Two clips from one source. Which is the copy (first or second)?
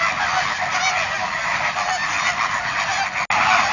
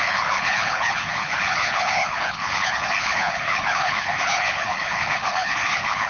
second